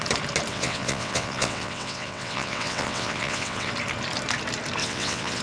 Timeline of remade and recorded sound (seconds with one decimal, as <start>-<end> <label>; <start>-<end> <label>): 0.0-0.5 recorded; 0.5-3.7 remade; 3.7-4.8 recorded; 4.8-5.4 remade